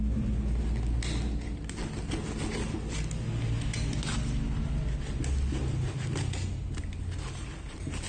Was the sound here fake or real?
real